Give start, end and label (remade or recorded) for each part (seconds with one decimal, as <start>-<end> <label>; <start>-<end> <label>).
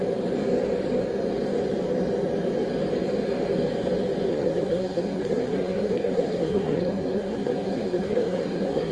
0.0-4.3 recorded; 4.3-8.9 remade